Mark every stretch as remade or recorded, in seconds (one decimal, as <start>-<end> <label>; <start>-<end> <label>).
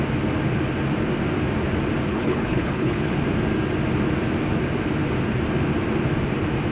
0.0-2.1 recorded; 2.1-3.2 remade; 3.2-6.7 recorded